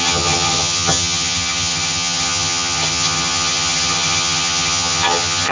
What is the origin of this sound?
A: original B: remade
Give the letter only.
B